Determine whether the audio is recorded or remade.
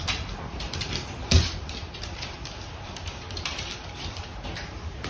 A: remade